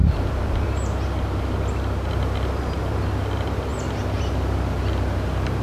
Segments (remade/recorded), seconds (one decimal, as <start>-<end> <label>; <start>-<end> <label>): 0.0-2.1 remade; 2.1-5.6 recorded